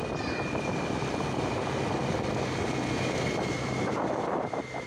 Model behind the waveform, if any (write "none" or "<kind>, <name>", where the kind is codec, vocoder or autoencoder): none